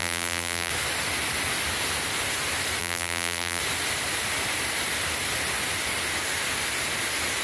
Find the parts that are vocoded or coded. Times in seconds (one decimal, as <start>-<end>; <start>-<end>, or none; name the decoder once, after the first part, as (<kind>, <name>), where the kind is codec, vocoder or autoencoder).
0.0-0.7 (vocoder, BigVGAN v2); 2.8-3.6